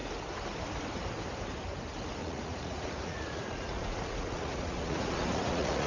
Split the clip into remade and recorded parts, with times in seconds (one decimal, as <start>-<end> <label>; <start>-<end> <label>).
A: 0.0-2.2 recorded; 2.2-5.9 remade

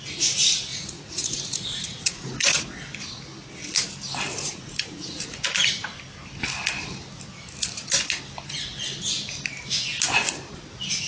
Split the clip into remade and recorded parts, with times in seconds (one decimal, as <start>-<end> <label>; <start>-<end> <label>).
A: 0.0-0.7 recorded; 0.7-2.6 remade; 2.6-4.3 recorded; 4.3-5.2 remade; 5.2-11.1 recorded

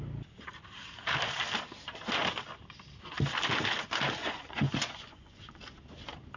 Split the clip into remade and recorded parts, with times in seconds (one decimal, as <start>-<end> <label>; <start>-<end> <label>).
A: 0.0-4.2 recorded; 4.2-5.6 remade; 5.6-6.4 recorded

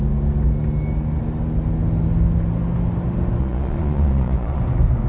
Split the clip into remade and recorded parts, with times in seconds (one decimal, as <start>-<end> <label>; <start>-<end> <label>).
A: 0.0-3.4 recorded; 3.4-4.6 remade; 4.6-5.1 recorded